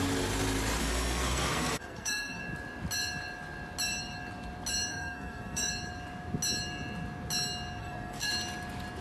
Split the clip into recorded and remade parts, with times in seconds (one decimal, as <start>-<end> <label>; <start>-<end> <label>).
0.0-0.8 recorded; 0.8-2.4 remade; 2.4-4.9 recorded; 4.9-5.7 remade; 5.7-7.8 recorded; 7.8-8.3 remade; 8.3-9.0 recorded